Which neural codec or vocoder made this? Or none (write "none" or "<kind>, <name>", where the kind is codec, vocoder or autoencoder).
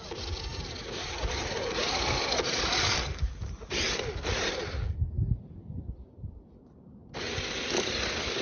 none